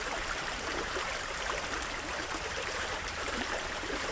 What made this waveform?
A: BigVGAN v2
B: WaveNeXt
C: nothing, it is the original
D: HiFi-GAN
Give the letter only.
A